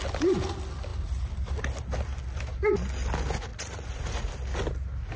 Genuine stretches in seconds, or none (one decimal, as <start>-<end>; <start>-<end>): 0.0-3.5; 4.3-5.2

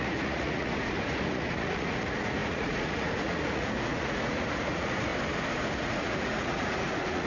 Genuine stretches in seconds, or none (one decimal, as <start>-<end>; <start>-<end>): 5.1-5.8

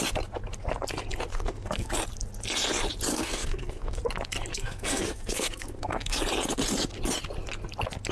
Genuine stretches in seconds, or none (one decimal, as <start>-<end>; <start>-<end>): 0.0-1.3; 1.9-3.1; 4.0-4.5; 6.2-8.1

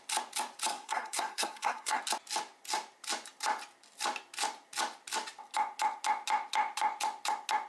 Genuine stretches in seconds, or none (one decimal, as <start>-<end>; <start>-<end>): 0.0-0.7; 2.0-7.7